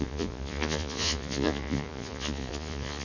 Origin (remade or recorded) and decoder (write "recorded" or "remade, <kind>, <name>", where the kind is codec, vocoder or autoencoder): remade, vocoder, Vocos